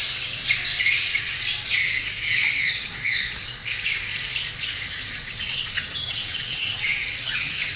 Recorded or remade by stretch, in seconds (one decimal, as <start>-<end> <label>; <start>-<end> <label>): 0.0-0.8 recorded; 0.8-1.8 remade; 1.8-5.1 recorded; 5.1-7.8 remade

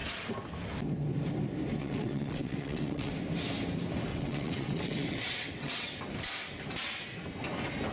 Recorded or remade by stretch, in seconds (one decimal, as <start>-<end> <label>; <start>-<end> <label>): 0.0-1.8 recorded; 1.8-3.1 remade; 3.1-4.1 recorded; 4.1-5.9 remade; 5.9-7.9 recorded

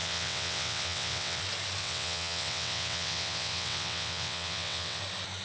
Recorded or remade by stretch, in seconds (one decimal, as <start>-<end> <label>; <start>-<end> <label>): 0.0-1.4 remade; 1.4-1.8 recorded; 1.8-5.0 remade; 5.0-5.4 recorded

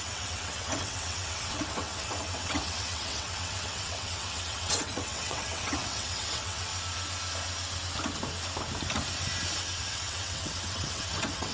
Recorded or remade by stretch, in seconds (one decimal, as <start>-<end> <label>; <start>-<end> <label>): 0.0-6.7 remade; 6.7-9.8 recorded; 9.8-11.5 remade

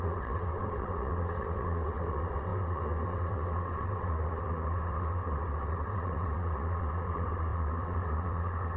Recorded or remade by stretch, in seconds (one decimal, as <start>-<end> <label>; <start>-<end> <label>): 0.0-8.8 remade